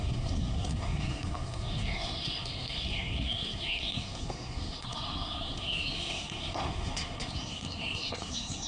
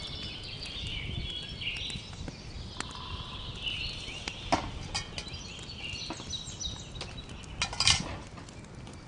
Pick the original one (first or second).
second